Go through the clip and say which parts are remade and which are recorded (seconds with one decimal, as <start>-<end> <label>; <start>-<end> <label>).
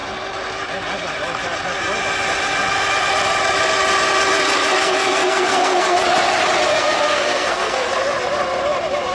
0.0-4.8 recorded; 4.8-6.0 remade; 6.0-6.7 recorded; 6.7-7.9 remade; 7.9-9.1 recorded